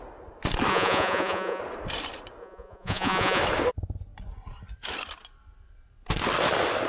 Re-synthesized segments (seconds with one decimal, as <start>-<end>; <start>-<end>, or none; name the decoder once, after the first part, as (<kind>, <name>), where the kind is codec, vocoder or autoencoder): 0.7-1.6 (vocoder, Vocos); 2.4-3.4